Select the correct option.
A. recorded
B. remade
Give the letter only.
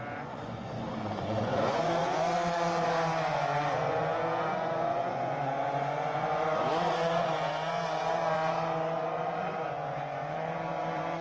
B